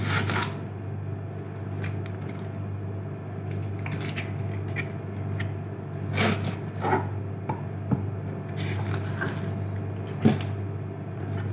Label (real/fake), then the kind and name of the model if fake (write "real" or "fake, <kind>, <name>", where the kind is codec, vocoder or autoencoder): real